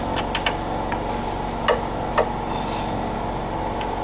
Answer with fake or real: real